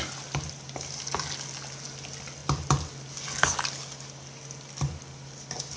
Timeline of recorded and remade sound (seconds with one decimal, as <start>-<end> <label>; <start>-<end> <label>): 0.0-5.8 recorded